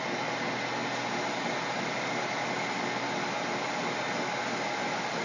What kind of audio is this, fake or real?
real